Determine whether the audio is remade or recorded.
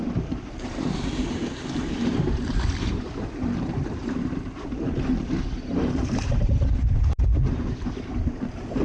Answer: remade